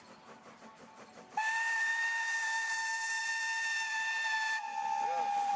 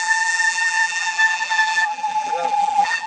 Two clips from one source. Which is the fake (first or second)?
second